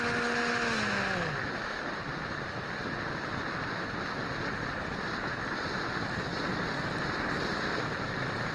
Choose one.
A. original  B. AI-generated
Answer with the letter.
A